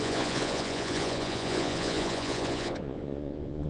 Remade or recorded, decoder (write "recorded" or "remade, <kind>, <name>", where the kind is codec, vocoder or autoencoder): remade, vocoder, Vocos